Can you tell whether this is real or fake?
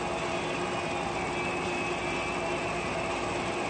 real